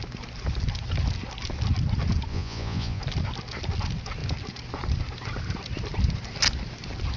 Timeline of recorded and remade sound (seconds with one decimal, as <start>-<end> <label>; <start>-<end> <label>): 0.0-2.3 recorded; 2.3-3.0 remade; 3.0-7.2 recorded